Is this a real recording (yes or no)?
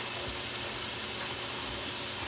yes